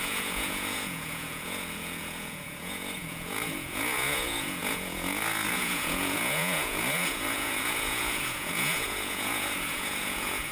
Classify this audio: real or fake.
fake